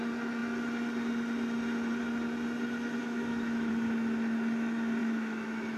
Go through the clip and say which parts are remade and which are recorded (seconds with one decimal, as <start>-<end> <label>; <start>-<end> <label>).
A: 0.0-3.0 recorded; 3.0-3.7 remade; 3.7-5.0 recorded; 5.0-5.8 remade

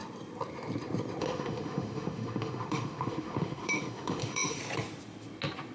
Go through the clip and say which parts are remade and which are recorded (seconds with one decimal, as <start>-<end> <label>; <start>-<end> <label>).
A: 0.0-1.2 recorded; 1.2-4.6 remade; 4.6-5.7 recorded

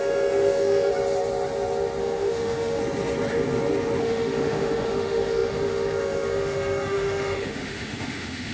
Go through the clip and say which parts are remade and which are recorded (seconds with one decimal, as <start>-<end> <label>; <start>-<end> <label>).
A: 0.0-0.9 remade; 0.9-2.0 recorded; 2.0-2.8 remade; 2.8-4.0 recorded; 4.0-8.5 remade

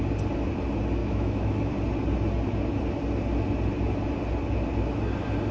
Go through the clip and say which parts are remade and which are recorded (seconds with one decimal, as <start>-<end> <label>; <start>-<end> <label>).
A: 0.0-1.0 recorded; 1.0-1.7 remade; 1.7-5.5 recorded

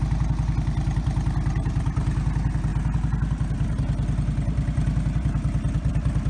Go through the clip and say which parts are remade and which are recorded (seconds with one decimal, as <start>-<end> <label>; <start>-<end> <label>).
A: 0.0-6.3 recorded

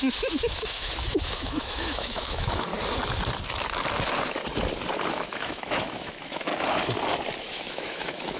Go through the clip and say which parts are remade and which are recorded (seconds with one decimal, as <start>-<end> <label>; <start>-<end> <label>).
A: 0.0-2.7 remade; 2.7-5.1 recorded; 5.1-6.5 remade; 6.5-7.4 recorded; 7.4-8.4 remade